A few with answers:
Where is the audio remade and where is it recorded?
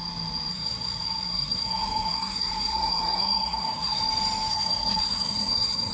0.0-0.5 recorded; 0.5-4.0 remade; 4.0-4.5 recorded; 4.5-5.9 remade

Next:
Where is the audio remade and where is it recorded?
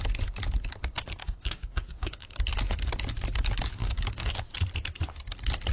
0.0-1.2 recorded; 1.2-2.4 remade; 2.4-3.8 recorded; 3.8-4.4 remade; 4.4-5.7 recorded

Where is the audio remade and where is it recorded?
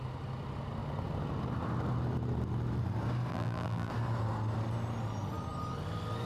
0.0-3.3 recorded; 3.3-3.9 remade; 3.9-6.3 recorded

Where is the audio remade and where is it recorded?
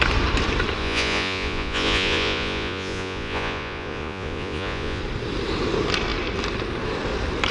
0.0-0.8 recorded; 0.8-5.0 remade; 5.0-7.5 recorded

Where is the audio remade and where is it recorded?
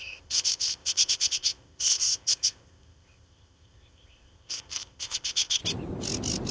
0.0-5.6 remade; 5.6-6.5 recorded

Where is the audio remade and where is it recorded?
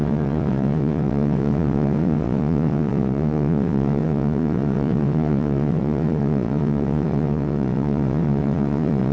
0.0-9.1 remade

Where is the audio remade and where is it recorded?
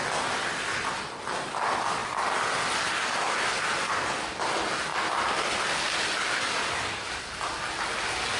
0.0-8.4 recorded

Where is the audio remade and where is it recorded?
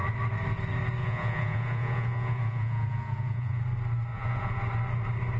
0.0-1.0 recorded; 1.0-3.6 remade; 3.6-4.1 recorded; 4.1-4.6 remade; 4.6-5.4 recorded